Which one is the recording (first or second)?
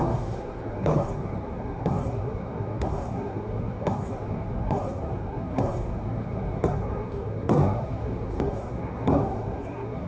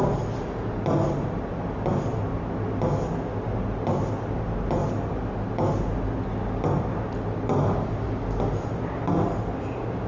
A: second